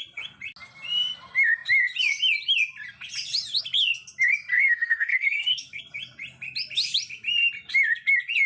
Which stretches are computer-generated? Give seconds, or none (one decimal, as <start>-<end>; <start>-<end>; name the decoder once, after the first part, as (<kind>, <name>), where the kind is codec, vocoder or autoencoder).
4.5-5.8 (codec, SNAC)